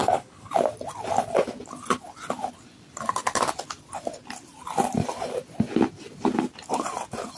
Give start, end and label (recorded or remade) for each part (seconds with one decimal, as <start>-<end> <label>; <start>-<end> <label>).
0.0-0.5 remade; 0.5-7.4 recorded